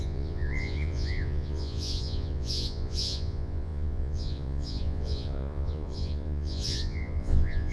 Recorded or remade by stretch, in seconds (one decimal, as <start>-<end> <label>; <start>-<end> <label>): 0.0-7.7 remade